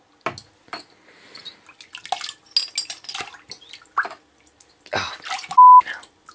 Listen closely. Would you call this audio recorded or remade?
recorded